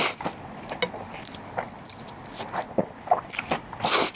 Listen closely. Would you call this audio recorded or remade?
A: recorded